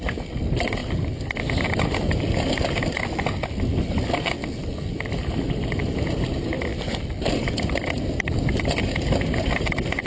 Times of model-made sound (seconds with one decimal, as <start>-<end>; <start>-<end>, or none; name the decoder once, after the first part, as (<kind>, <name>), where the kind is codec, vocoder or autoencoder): 5.2-5.8 (vocoder, BigVGAN v2)